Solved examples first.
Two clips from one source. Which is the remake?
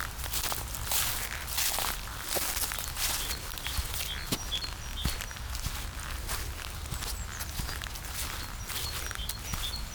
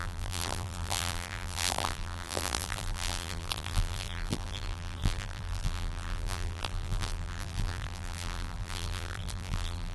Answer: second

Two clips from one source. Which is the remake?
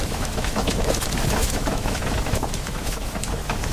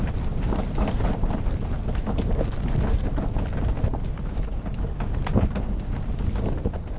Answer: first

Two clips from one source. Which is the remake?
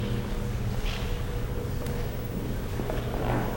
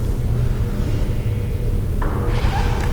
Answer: first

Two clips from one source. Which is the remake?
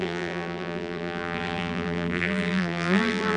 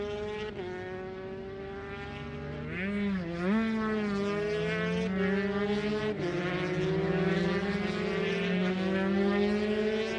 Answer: first